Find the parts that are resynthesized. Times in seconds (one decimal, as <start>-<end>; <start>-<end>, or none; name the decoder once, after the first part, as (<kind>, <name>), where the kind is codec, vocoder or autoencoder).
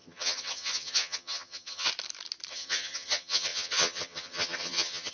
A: 0.0-1.9 (vocoder, HiFi-GAN); 2.5-5.1